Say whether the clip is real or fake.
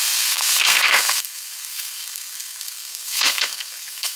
fake